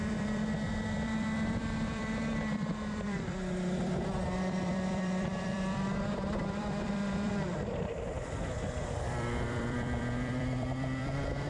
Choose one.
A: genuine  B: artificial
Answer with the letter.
B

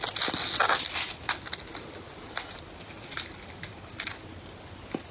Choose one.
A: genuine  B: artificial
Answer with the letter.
A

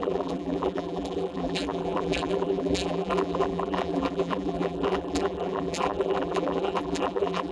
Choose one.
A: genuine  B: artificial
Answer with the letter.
B